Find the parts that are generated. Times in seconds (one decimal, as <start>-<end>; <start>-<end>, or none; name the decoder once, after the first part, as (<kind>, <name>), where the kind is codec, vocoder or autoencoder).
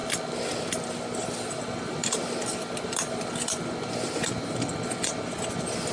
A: none